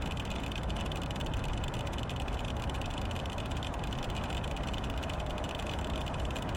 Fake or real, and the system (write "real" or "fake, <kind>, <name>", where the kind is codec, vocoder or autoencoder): real